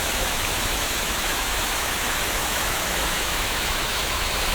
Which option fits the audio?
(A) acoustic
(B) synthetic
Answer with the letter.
B